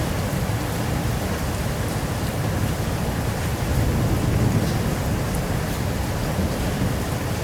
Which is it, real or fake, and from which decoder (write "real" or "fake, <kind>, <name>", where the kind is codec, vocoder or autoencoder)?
real